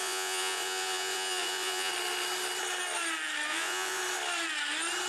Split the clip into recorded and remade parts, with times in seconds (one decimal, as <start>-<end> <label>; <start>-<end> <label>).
0.0-1.9 remade; 1.9-3.5 recorded; 3.5-4.0 remade; 4.0-5.1 recorded

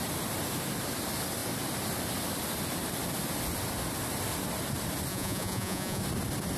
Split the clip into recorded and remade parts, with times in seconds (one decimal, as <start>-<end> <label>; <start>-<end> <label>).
0.0-5.1 recorded; 5.1-6.0 remade; 6.0-6.6 recorded